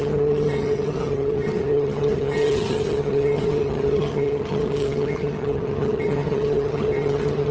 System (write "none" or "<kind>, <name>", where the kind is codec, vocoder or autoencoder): vocoder, HiFi-GAN